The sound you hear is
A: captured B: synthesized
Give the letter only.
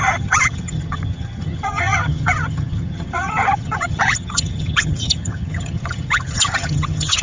B